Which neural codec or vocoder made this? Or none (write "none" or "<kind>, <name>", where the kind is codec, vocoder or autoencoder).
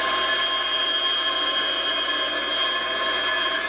none